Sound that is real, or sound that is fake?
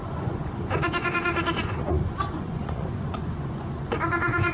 fake